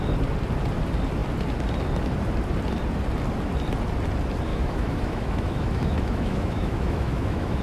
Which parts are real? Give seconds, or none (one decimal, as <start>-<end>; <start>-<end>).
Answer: 0.0-4.5

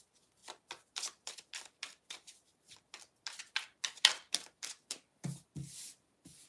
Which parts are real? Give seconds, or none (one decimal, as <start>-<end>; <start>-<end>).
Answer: 0.0-6.5

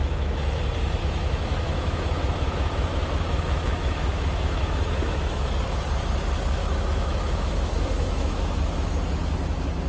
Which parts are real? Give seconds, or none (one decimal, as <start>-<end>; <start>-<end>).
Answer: 0.6-1.0; 5.5-6.6; 8.9-9.9

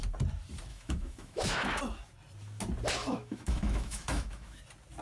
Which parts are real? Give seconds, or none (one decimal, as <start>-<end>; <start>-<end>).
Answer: 0.0-0.7; 1.8-3.0; 4.6-5.0

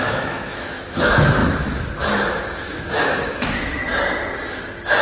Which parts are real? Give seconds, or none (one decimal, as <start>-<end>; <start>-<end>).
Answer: 3.9-5.0